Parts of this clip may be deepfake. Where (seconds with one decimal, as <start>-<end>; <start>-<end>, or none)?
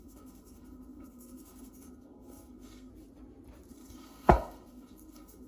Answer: 0.0-2.9; 3.7-5.5